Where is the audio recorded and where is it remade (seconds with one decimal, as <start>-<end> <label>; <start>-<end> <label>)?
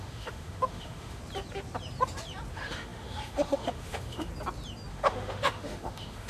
0.0-1.2 remade; 1.2-2.5 recorded; 2.5-4.3 remade; 4.3-4.9 recorded; 4.9-6.3 remade